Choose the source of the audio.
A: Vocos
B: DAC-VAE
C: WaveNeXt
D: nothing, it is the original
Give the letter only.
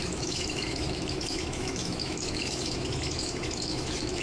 B